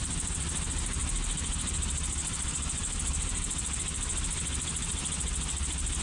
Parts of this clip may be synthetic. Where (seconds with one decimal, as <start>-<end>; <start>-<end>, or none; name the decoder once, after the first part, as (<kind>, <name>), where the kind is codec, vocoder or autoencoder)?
none

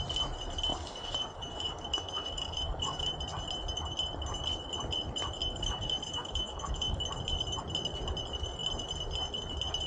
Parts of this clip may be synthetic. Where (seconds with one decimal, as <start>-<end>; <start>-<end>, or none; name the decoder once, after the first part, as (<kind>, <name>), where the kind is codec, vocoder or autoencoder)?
0.7-3.1 (codec, DAC); 5.4-7.0

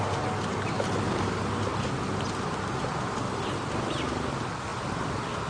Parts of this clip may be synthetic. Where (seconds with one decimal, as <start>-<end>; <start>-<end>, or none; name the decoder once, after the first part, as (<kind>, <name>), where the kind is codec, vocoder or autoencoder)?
none

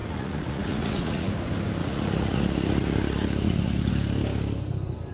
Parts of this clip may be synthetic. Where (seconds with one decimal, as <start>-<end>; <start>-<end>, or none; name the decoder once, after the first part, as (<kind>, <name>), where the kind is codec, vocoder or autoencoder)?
0.0-1.3 (vocoder, Vocos); 1.8-3.9

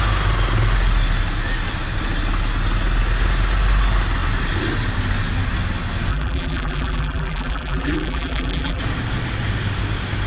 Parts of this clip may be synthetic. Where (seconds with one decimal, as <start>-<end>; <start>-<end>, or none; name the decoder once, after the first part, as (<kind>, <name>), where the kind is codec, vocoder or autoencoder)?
6.1-8.8 (vocoder, BigVGAN v2)

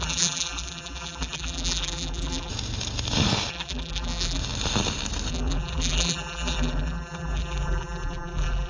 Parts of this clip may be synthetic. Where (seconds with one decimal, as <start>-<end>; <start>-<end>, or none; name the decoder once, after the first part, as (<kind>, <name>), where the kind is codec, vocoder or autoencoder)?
0.0-2.5 (vocoder, BigVGAN v2); 3.5-4.4; 5.3-8.7